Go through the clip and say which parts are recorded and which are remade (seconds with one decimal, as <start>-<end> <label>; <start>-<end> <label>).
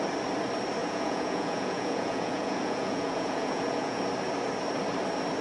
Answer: 0.0-0.8 recorded; 0.8-4.0 remade; 4.0-5.4 recorded